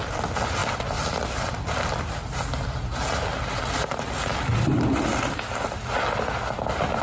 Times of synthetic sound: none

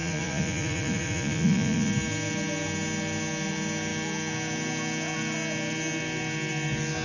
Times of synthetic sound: 0.0-1.9

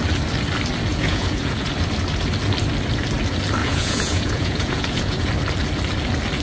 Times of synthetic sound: 0.9-1.7; 3.6-5.3

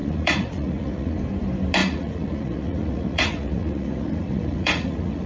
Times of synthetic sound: 0.0-1.2; 1.8-5.3

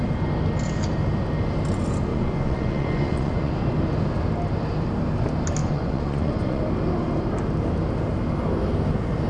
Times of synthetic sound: 2.1-3.5; 5.6-6.6